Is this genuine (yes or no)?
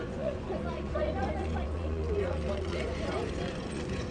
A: no